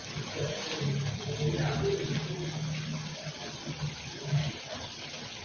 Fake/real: real